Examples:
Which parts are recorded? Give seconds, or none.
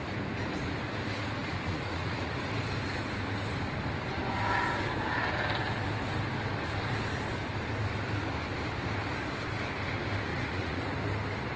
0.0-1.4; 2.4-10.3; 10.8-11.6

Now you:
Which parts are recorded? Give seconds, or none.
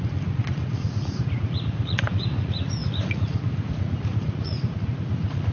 none